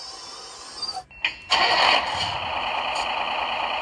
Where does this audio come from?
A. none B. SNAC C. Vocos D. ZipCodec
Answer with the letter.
A